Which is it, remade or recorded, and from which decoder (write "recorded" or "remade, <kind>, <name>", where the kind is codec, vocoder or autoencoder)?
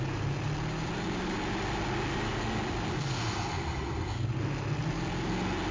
recorded